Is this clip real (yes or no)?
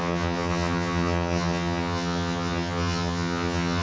no